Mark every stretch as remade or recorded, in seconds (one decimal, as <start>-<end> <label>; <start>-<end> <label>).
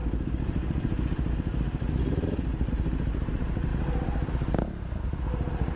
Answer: 0.0-3.7 remade; 3.7-5.8 recorded